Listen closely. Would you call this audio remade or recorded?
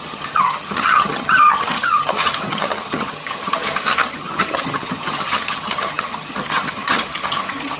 remade